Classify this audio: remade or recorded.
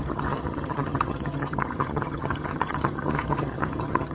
remade